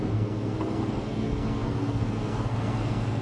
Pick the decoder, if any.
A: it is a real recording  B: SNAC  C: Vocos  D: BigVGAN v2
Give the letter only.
B